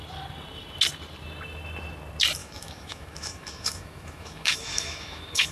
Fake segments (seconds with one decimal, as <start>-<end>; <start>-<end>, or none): 2.4-5.5